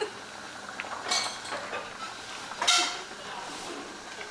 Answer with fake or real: real